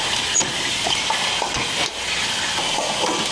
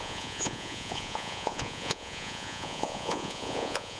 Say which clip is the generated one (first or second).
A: second